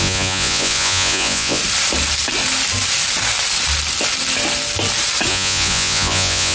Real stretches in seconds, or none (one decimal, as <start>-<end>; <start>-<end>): 1.6-5.3